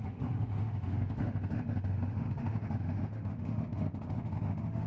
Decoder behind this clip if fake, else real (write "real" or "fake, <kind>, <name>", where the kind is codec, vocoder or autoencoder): fake, autoencoder, DAC-VAE